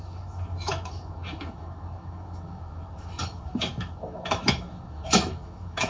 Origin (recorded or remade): remade